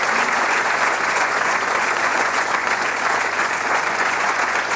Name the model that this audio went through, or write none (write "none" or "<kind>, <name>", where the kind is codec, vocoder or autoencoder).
vocoder, Vocos